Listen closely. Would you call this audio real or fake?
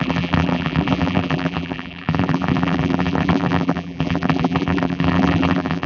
fake